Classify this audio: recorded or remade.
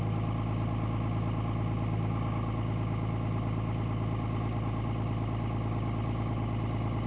recorded